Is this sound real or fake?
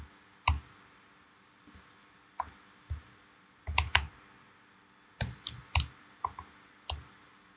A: real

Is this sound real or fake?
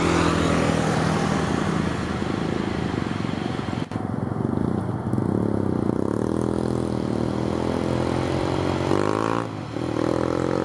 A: real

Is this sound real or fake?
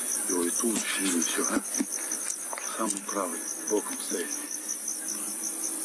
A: real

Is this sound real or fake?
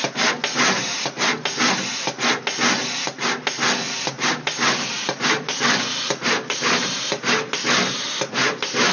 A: real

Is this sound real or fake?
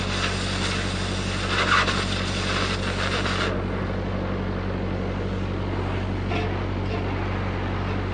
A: real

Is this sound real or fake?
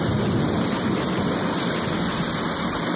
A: real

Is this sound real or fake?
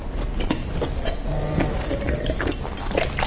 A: real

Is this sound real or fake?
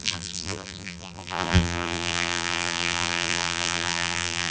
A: fake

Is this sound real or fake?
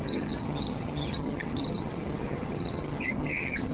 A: fake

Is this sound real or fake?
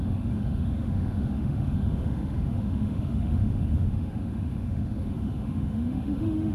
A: fake